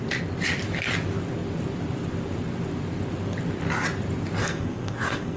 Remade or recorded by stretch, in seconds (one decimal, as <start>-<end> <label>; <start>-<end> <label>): 0.0-4.4 recorded; 4.4-5.4 remade